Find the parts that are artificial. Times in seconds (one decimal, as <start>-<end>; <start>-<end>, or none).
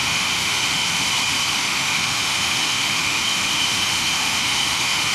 0.0-1.1; 1.6-5.1